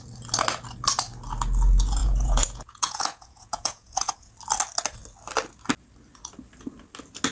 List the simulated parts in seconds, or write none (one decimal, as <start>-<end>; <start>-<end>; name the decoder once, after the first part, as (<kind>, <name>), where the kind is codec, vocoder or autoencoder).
2.0-4.3 (vocoder, Vocos)